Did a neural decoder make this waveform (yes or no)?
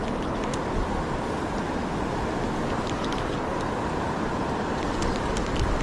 no